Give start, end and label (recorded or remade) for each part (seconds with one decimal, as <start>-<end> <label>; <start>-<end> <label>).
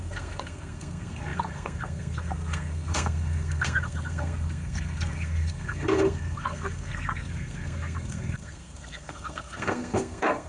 0.0-10.5 remade